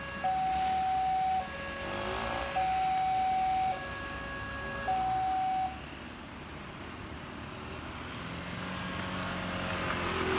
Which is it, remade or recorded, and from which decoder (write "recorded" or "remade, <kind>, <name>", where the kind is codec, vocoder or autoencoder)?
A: recorded